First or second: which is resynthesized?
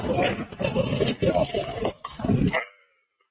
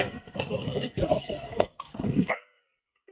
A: second